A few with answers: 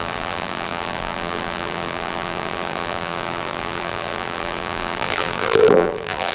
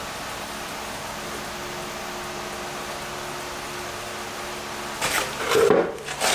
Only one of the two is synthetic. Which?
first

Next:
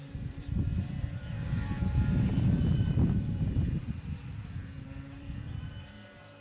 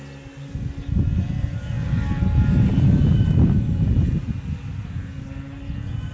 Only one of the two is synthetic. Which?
first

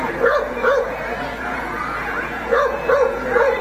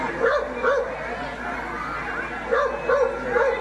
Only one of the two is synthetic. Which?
first